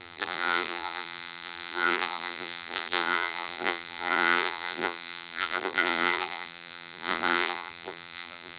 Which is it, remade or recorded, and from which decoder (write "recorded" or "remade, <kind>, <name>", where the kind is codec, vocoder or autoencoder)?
remade, vocoder, BigVGAN v2